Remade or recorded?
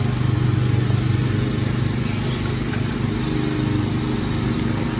recorded